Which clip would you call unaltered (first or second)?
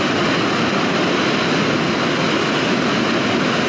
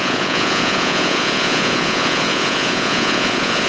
first